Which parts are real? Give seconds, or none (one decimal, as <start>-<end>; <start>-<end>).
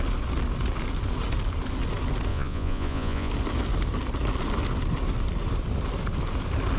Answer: 0.0-2.3; 3.3-6.8